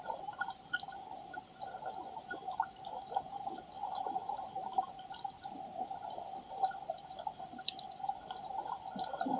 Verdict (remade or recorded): recorded